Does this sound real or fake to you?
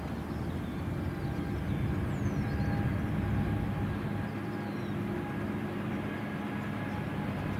real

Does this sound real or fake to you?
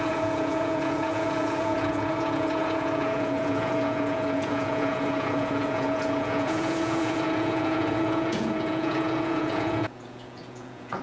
fake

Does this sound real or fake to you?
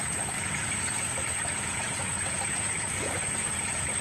fake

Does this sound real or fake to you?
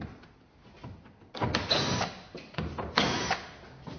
real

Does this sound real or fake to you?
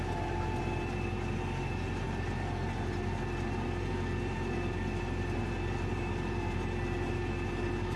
real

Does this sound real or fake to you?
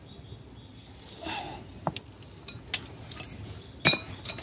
real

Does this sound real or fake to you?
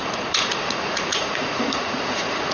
fake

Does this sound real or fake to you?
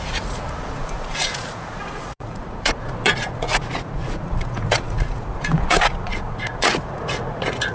fake